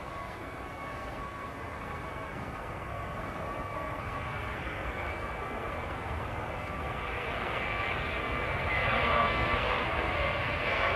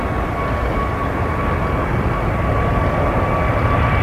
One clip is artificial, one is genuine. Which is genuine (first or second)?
second